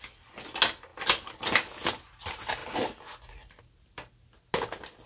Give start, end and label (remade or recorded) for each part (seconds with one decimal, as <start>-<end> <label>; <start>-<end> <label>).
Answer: 0.0-5.1 recorded